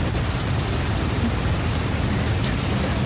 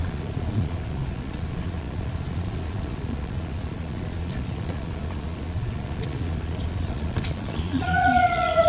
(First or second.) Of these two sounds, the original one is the first